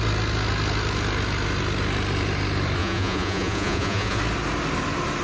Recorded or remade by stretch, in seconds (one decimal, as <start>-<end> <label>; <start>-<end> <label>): 0.0-2.8 recorded; 2.8-4.2 remade; 4.2-5.2 recorded